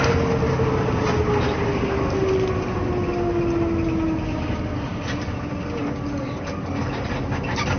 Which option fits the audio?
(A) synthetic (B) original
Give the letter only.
B